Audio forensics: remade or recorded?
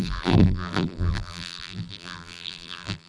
remade